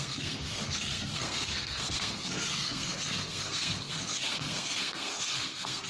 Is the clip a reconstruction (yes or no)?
yes